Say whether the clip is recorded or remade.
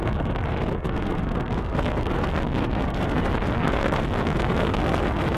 remade